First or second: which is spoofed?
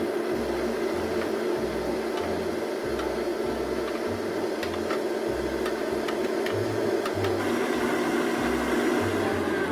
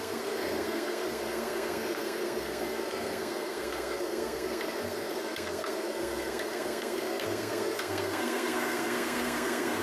second